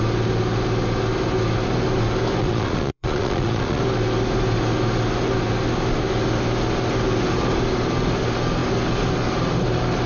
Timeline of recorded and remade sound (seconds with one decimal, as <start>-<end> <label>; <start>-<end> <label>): 0.0-2.4 recorded; 2.4-3.8 remade; 3.8-10.1 recorded